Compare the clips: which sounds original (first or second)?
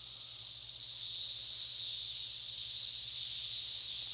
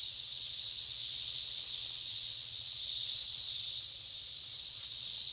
first